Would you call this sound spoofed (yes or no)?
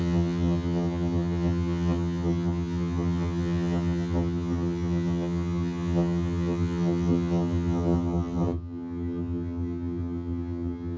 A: yes